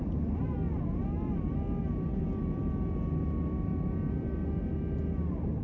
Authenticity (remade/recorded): recorded